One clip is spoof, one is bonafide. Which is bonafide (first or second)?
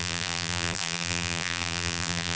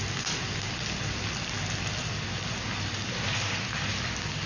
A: second